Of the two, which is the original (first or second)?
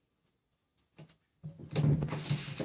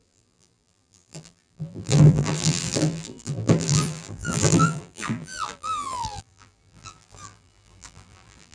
first